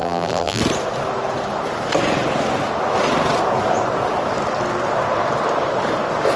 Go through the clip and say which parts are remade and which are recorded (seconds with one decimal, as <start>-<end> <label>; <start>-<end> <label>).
0.0-0.6 remade; 0.6-6.4 recorded